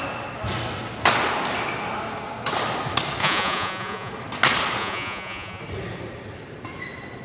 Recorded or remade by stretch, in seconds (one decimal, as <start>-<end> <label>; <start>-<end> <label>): 0.0-3.2 recorded; 3.2-4.1 remade; 4.1-4.8 recorded; 4.8-5.6 remade; 5.6-7.2 recorded